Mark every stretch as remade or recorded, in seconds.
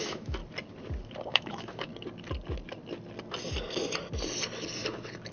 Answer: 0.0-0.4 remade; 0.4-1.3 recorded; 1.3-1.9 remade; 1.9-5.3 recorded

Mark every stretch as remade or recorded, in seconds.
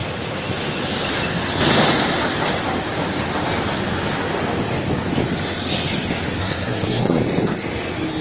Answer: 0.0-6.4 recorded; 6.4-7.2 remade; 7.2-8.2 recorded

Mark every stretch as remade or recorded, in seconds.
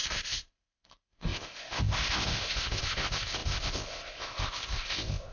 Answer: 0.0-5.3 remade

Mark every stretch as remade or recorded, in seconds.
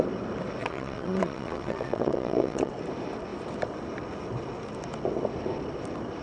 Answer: 0.0-0.6 recorded; 0.6-2.7 remade; 2.7-6.2 recorded